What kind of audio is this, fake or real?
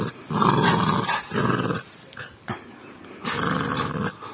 real